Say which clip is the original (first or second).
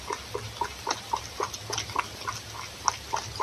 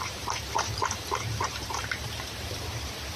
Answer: first